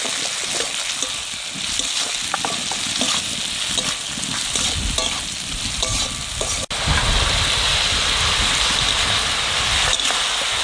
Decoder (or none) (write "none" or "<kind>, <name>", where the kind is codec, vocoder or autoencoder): none